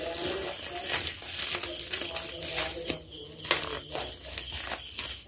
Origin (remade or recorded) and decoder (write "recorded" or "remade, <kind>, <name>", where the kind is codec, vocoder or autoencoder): recorded